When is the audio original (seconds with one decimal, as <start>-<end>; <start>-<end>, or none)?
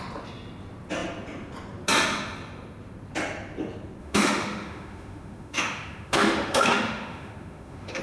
0.0-4.0